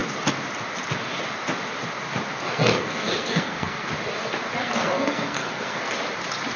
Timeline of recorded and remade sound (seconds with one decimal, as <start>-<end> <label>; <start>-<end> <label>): 0.0-2.3 recorded; 2.3-3.9 remade; 3.9-4.6 recorded; 4.6-5.9 remade; 5.9-6.6 recorded